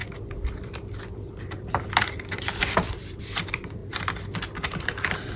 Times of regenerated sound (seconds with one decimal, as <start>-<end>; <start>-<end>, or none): 0.0-3.8; 4.8-5.4